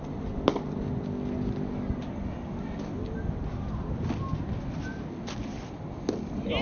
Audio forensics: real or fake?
real